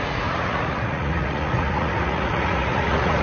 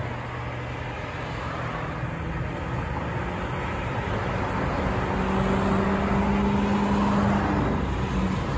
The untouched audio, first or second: second